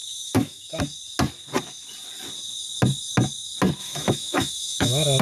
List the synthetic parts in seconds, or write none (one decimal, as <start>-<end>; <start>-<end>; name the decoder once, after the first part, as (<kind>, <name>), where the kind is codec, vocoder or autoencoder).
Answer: 0.0-0.8 (autoencoder, DAC-VAE); 3.8-5.2